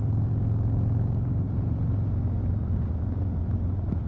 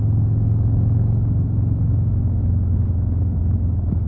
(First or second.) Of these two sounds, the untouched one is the second